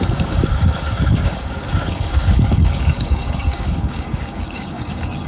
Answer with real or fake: fake